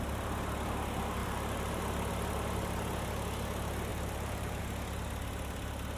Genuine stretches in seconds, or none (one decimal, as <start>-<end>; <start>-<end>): 0.0-1.2; 1.8-3.9; 4.6-6.0